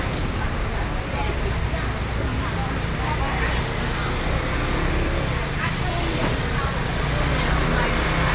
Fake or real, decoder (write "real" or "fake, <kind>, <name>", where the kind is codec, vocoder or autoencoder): real